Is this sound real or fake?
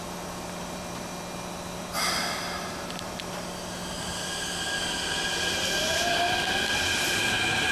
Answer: real